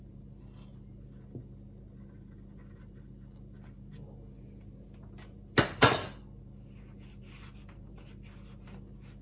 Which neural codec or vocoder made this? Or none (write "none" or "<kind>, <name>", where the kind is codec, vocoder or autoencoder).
none